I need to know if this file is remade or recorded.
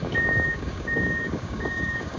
remade